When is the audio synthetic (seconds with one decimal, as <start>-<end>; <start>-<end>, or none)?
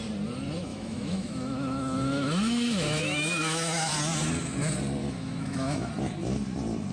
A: 0.7-3.9; 5.0-5.9